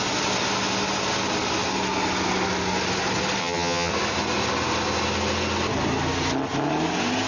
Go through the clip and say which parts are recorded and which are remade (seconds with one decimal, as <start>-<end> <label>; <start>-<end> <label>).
0.0-3.4 recorded; 3.4-3.9 remade; 3.9-7.3 recorded